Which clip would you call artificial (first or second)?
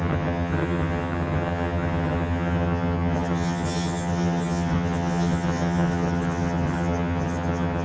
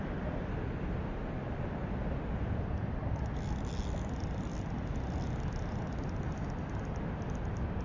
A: first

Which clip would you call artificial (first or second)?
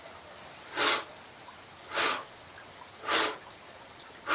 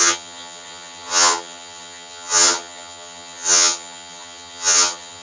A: second